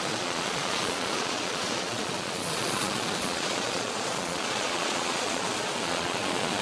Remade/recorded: remade